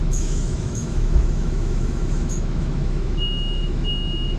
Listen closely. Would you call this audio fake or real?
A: fake